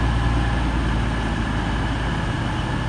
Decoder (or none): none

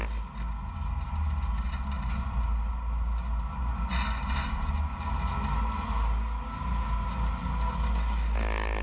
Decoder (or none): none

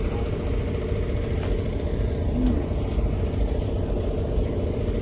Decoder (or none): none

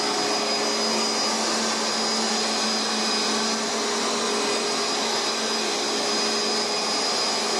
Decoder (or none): none